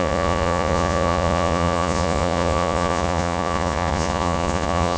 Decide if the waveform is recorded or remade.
remade